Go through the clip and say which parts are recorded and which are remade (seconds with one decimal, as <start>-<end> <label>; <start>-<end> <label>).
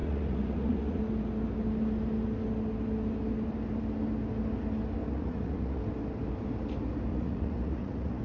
0.0-1.0 remade; 1.0-5.0 recorded; 5.0-5.8 remade; 5.8-7.1 recorded; 7.1-8.2 remade